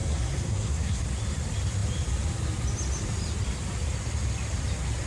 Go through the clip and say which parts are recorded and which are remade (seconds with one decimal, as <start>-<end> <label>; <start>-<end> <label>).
0.0-1.0 remade; 1.0-5.1 recorded